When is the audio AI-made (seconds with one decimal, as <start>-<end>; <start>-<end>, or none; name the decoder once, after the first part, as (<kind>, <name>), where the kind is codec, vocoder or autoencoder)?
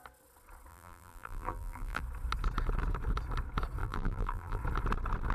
0.7-2.0 (vocoder, BigVGAN v2); 3.8-4.6